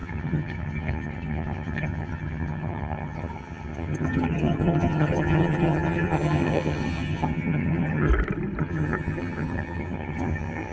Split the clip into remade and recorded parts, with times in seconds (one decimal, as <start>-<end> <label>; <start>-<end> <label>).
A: 0.0-8.1 remade; 8.1-8.6 recorded; 8.6-10.7 remade